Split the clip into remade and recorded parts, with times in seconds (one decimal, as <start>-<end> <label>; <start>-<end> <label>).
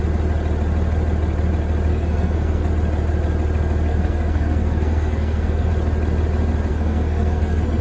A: 0.0-1.9 recorded; 1.9-2.7 remade; 2.7-3.9 recorded; 3.9-5.7 remade; 5.7-6.7 recorded; 6.7-7.8 remade